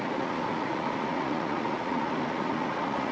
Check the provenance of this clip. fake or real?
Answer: fake